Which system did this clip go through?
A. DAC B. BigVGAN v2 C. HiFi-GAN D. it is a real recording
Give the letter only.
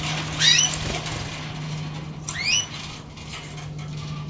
D